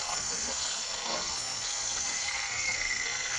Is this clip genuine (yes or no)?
no